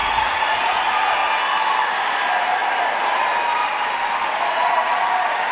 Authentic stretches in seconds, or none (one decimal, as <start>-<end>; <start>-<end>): 1.2-4.5

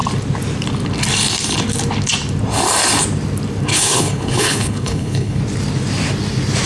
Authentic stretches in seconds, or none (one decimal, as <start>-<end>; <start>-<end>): 0.0-3.7; 5.4-6.7

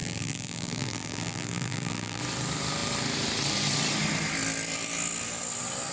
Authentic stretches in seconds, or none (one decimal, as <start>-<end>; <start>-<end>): 2.2-5.9

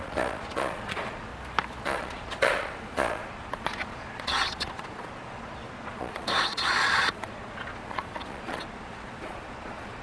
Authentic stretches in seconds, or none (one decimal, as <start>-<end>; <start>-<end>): 1.3-1.8

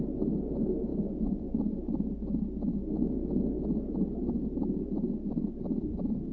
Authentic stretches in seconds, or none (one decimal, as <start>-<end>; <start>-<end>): 0.0-6.3

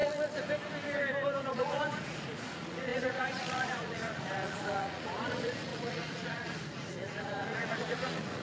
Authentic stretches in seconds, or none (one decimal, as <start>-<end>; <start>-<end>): 0.0-1.4

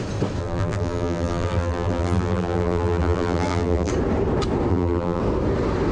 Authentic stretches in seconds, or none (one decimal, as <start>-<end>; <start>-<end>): 0.0-0.4; 3.9-4.7; 5.2-5.9

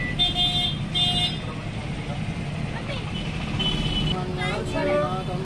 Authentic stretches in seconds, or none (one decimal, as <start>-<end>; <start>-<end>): 0.0-5.4